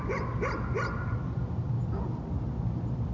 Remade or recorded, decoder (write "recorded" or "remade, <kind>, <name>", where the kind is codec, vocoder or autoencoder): recorded